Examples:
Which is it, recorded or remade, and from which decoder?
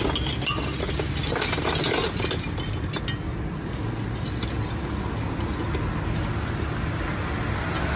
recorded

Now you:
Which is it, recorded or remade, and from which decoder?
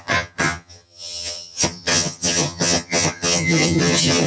remade, vocoder, HiFi-GAN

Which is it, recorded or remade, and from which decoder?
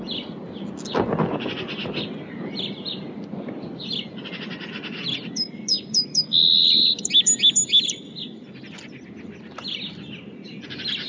recorded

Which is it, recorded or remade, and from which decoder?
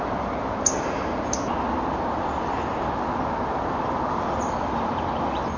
recorded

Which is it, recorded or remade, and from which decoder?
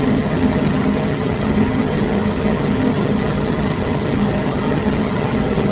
remade, vocoder, HiFi-GAN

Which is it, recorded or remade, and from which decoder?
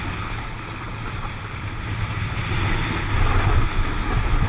recorded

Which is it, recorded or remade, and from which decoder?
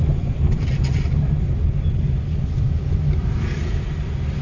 recorded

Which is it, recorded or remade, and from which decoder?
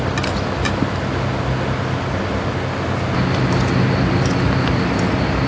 recorded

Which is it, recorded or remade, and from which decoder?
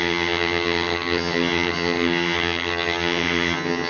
remade, vocoder, HiFi-GAN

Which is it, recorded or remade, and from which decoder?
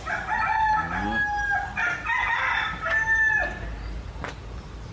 recorded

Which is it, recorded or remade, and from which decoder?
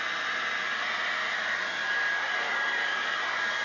recorded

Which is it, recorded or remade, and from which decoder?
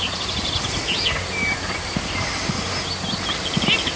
recorded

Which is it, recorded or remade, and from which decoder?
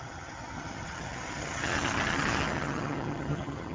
remade, vocoder, HiFi-GAN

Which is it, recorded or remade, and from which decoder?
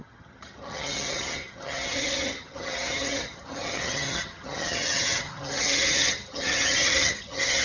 remade, vocoder, HiFi-GAN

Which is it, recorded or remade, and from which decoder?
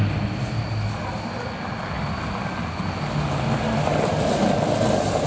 recorded